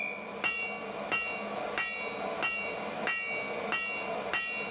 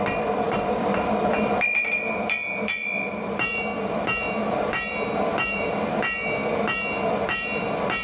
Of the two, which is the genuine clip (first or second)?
first